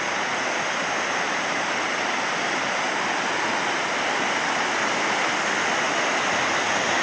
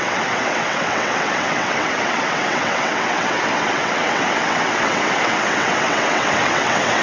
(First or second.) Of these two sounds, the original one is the first